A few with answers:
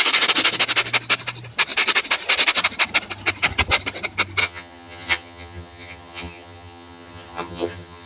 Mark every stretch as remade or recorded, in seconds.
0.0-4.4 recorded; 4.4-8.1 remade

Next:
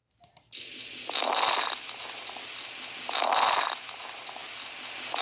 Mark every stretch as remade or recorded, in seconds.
0.0-5.2 recorded

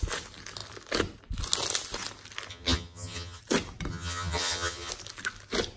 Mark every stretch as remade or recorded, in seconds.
0.0-2.5 recorded; 2.5-3.4 remade; 3.4-3.9 recorded; 3.9-4.9 remade; 4.9-5.8 recorded

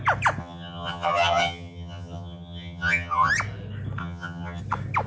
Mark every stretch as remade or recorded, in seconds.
0.0-0.4 recorded; 0.4-3.3 remade; 3.3-4.0 recorded; 4.0-4.6 remade; 4.6-5.1 recorded

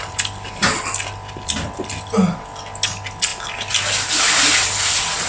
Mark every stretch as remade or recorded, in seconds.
0.0-5.3 recorded

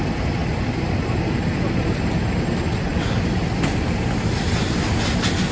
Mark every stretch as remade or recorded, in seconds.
0.0-5.5 recorded

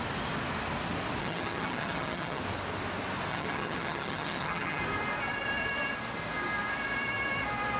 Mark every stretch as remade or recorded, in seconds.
0.0-1.2 recorded; 1.2-2.4 remade; 2.4-3.3 recorded; 3.3-4.8 remade; 4.8-7.8 recorded